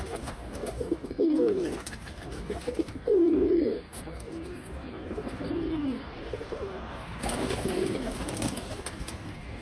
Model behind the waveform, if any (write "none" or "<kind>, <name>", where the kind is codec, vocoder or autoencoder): codec, DAC